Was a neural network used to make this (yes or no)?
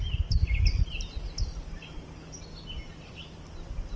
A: no